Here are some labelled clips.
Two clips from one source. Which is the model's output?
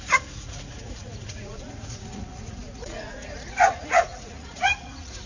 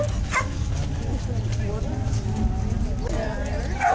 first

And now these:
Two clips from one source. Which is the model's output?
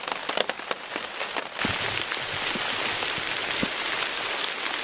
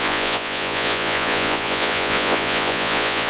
second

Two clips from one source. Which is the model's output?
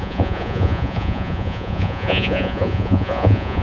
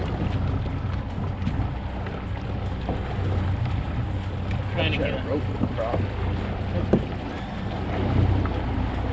first